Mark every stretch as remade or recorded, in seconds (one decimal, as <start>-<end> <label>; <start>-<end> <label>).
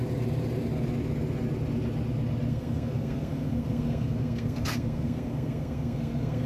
0.0-2.5 recorded; 2.5-6.5 remade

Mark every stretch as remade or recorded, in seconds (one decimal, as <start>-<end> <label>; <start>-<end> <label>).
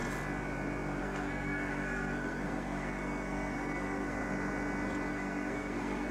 0.0-1.0 recorded; 1.0-4.2 remade; 4.2-5.1 recorded; 5.1-6.1 remade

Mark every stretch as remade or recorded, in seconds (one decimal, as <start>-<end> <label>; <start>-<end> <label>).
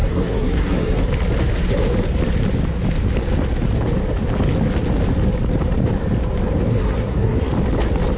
0.0-1.0 remade; 1.0-6.7 recorded; 6.7-7.5 remade; 7.5-8.2 recorded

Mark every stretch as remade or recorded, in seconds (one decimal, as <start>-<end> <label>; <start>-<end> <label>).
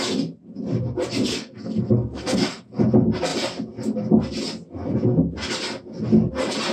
0.0-1.3 recorded; 1.3-2.8 remade; 2.8-6.7 recorded